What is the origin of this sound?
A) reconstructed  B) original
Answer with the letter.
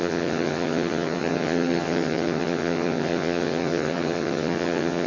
A